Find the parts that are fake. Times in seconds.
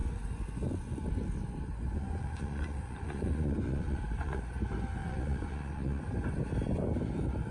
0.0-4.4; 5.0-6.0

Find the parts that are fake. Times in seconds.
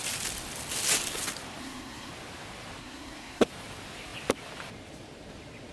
1.6-2.1; 2.8-3.5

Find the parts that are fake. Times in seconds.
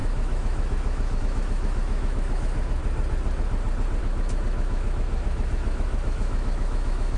0.0-2.8; 4.0-7.2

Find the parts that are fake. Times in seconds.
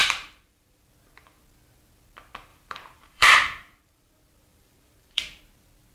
0.0-0.9; 2.5-4.1; 4.5-5.4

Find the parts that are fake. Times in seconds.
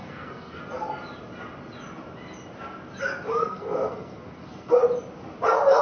0.0-0.6; 3.3-4.8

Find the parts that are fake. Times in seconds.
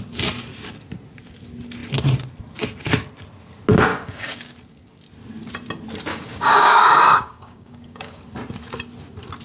3.9-4.5; 6.1-8.2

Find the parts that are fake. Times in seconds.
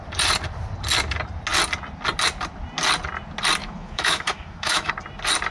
3.6-4.9